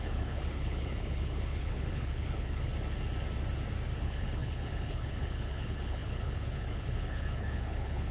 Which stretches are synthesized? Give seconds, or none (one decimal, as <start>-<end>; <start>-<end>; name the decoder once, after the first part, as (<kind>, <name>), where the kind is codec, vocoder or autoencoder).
0.0-2.7 (codec, HILCodec); 4.0-8.1